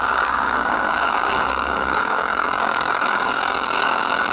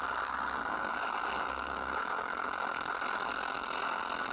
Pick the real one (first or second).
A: second